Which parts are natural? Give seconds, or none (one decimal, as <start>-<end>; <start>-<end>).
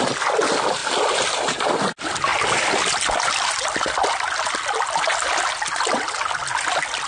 0.0-7.1